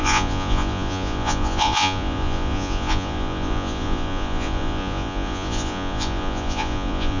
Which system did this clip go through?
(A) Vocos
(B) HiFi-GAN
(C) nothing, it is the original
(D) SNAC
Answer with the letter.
A